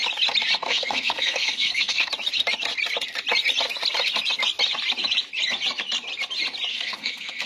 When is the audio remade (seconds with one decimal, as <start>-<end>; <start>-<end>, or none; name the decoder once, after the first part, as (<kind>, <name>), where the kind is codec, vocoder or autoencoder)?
0.6-2.1 (codec, SNAC); 6.7-7.5

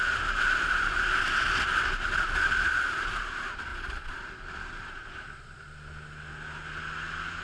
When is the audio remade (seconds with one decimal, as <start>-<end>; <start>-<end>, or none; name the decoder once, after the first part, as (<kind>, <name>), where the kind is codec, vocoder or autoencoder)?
3.7-4.2 (vocoder, Vocos)

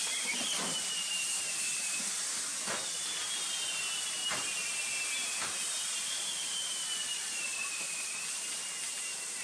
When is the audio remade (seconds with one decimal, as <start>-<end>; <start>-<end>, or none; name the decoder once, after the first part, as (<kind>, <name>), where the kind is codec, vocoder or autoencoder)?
none

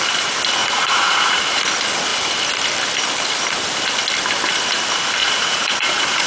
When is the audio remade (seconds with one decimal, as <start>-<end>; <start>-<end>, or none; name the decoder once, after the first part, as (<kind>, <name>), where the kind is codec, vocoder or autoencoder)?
0.6-1.4 (vocoder, Vocos); 5.2-6.3

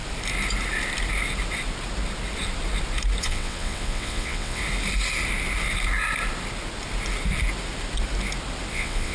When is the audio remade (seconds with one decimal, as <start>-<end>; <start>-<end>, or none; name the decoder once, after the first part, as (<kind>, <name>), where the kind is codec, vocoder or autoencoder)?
3.2-4.6 (vocoder, WaveNeXt); 8.7-9.1